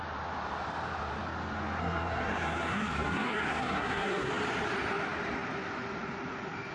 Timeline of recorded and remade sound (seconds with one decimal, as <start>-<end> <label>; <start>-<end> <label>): 0.0-1.8 recorded; 1.8-4.3 remade; 4.3-6.7 recorded